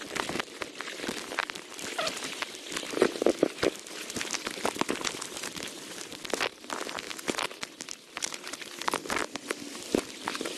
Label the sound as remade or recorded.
recorded